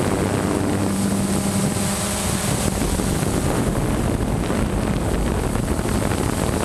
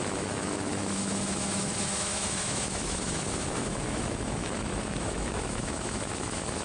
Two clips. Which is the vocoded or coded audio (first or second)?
second